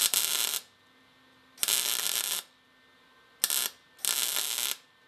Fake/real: real